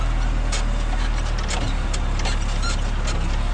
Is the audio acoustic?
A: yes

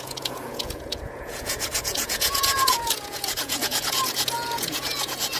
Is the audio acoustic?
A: no